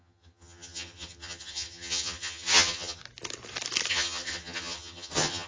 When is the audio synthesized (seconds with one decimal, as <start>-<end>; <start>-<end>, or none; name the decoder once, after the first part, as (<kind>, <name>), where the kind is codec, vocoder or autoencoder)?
0.0-3.0 (vocoder, HiFi-GAN); 3.9-5.5